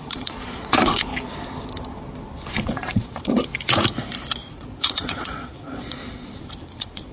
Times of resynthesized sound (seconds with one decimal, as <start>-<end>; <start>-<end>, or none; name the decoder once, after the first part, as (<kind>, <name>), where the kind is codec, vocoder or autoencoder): 0.0-1.1 (vocoder, Vocos); 2.5-3.5; 4.5-6.0; 6.6-7.1